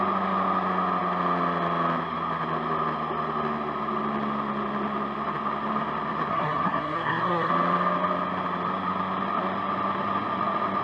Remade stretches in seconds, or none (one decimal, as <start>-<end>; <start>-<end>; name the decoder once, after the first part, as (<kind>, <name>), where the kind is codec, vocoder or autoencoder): 6.3-7.5 (codec, SNAC)